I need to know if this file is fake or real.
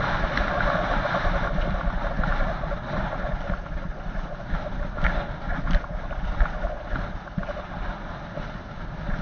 real